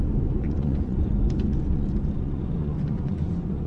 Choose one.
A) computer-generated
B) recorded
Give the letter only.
A